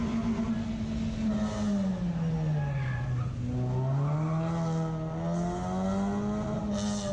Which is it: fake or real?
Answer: real